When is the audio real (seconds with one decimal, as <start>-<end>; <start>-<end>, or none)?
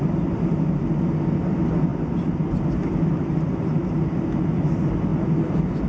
0.0-3.2; 4.4-5.9